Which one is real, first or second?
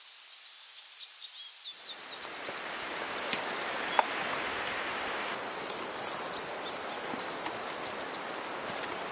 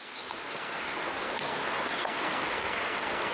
first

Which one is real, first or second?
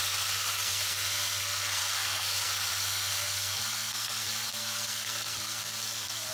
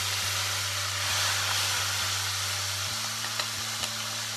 second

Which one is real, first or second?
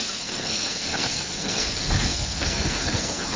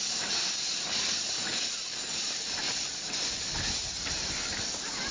second